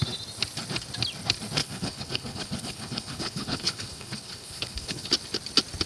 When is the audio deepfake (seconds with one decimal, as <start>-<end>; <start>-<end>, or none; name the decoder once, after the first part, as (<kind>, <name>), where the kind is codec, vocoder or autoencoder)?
1.6-5.1 (codec, HILCodec)